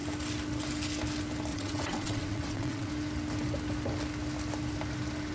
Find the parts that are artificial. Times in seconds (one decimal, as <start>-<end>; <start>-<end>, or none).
1.5-2.9